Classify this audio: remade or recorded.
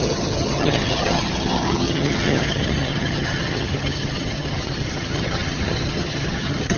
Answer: remade